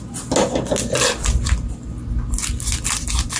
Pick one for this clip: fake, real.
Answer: real